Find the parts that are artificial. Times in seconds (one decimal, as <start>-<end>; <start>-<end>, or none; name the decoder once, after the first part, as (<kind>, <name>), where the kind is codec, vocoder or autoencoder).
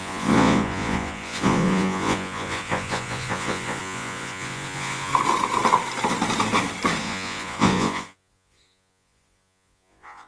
0.0-5.1 (vocoder, Vocos); 7.0-10.3